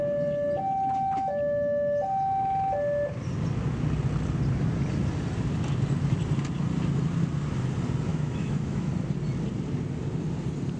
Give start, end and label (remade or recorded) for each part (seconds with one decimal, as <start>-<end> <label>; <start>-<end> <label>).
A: 0.0-8.1 recorded; 8.1-8.9 remade; 8.9-10.8 recorded